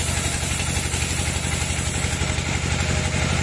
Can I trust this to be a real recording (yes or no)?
yes